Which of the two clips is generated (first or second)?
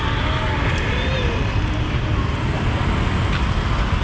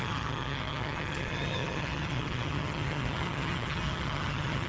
second